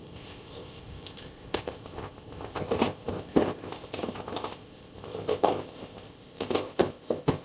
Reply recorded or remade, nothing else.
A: remade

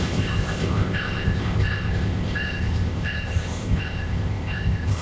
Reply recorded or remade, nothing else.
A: remade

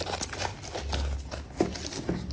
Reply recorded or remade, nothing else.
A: recorded